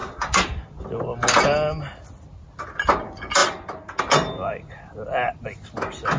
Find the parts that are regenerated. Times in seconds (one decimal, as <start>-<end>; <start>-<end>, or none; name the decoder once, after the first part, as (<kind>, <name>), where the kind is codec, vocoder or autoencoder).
none